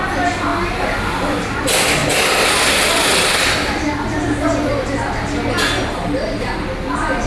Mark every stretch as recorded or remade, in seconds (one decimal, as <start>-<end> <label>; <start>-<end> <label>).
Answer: 0.0-7.3 recorded